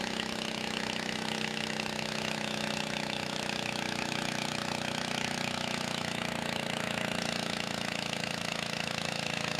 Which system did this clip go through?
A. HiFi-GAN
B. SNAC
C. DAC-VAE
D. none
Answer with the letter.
C